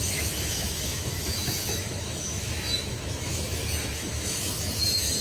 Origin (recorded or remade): remade